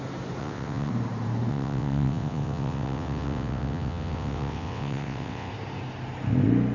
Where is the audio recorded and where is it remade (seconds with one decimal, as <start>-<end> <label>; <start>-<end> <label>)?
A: 0.0-0.4 recorded; 0.4-0.9 remade; 0.9-1.5 recorded; 1.5-5.5 remade; 5.5-6.7 recorded

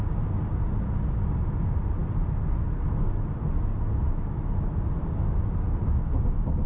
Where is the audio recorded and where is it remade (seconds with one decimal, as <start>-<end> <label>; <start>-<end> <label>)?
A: 0.0-6.7 recorded